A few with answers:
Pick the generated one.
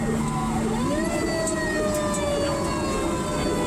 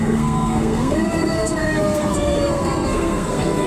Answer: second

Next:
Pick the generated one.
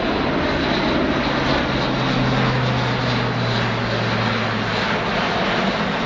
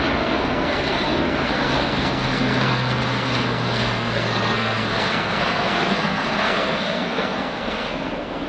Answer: second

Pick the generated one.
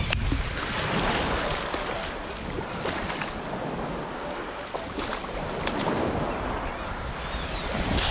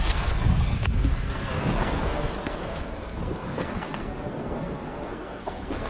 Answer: second